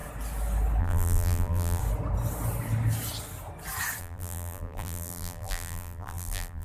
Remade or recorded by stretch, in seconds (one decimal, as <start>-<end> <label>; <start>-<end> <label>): 0.0-0.8 recorded; 0.8-1.8 remade; 1.8-4.0 recorded; 4.0-6.6 remade